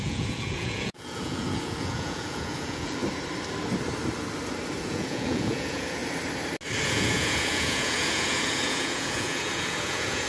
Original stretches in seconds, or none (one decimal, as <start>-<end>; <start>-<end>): 3.0-4.8; 6.0-6.8